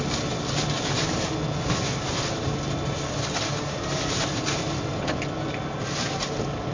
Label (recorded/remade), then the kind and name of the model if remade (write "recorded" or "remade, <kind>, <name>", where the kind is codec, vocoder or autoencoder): recorded